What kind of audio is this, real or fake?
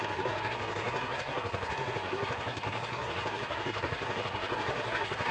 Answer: fake